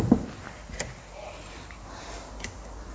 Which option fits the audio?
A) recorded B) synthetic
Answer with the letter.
A